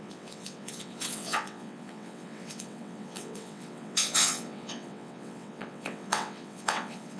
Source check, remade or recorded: remade